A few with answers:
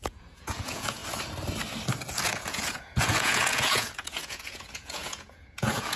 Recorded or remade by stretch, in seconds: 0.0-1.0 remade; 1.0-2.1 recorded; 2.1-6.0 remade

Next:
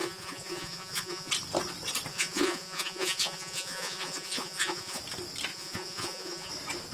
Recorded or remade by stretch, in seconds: 0.0-1.3 remade; 1.3-2.1 recorded; 2.1-5.0 remade; 5.0-5.5 recorded; 5.5-6.5 remade; 6.5-6.9 recorded

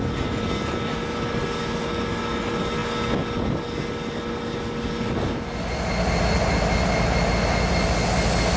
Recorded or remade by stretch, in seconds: 0.0-8.6 recorded

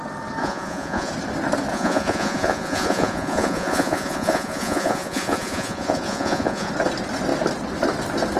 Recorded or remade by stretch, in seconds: 0.0-0.4 recorded; 0.4-1.1 remade; 1.1-1.7 recorded; 1.7-6.7 remade; 6.7-8.4 recorded

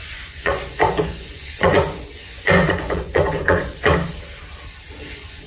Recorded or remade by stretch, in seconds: 0.0-3.9 remade; 3.9-5.1 recorded; 5.1-5.5 remade

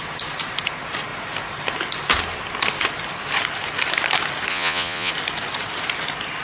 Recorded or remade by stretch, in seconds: 0.0-4.5 recorded; 4.5-5.1 remade; 5.1-6.4 recorded

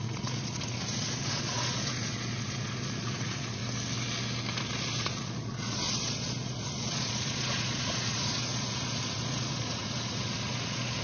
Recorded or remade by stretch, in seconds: 0.0-3.6 remade; 3.6-4.6 recorded; 4.6-11.0 remade